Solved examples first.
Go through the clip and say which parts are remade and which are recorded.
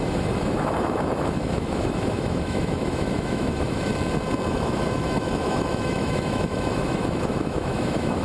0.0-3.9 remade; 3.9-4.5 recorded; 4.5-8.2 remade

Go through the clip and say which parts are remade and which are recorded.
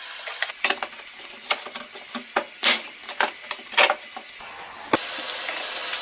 0.0-6.0 recorded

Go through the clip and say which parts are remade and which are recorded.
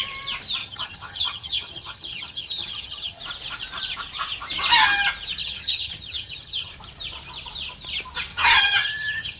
0.0-0.6 recorded; 0.6-3.2 remade; 3.2-5.4 recorded; 5.4-6.7 remade; 6.7-8.3 recorded; 8.3-9.4 remade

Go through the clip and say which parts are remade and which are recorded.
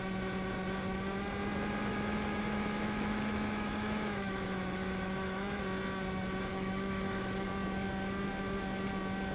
0.0-1.9 recorded; 1.9-5.6 remade; 5.6-6.5 recorded; 6.5-7.5 remade; 7.5-9.3 recorded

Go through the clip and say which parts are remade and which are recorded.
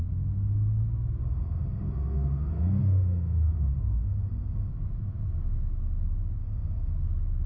0.0-1.2 recorded; 1.2-4.7 remade; 4.7-6.4 recorded; 6.4-6.9 remade; 6.9-7.5 recorded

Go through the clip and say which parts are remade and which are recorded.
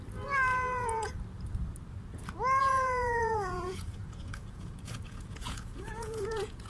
0.0-0.5 recorded; 0.5-1.1 remade; 1.1-2.6 recorded; 2.6-6.7 remade